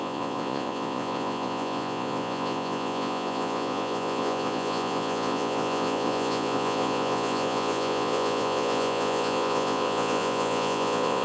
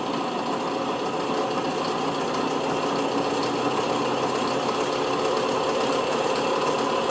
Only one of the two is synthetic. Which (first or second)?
first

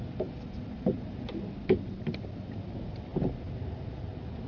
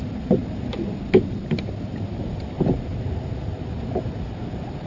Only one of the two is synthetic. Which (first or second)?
second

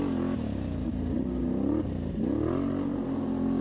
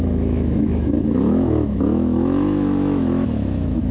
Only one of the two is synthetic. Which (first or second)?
second